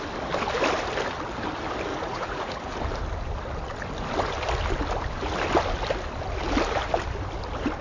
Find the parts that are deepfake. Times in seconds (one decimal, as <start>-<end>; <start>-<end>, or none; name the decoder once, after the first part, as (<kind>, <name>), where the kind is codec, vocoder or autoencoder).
1.9-2.6 (vocoder, Vocos)